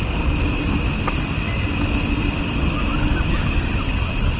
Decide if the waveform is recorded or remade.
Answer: recorded